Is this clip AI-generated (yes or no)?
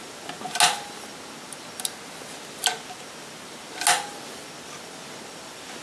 no